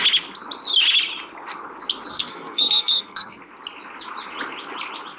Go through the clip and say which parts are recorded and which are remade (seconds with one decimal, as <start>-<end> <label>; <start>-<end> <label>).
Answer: 0.0-2.1 recorded; 2.1-3.4 remade; 3.4-5.2 recorded